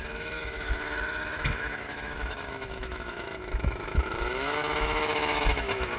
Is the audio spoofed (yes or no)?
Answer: yes